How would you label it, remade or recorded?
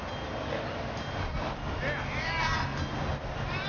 recorded